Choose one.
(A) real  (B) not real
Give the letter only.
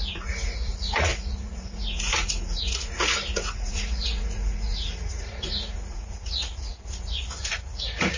B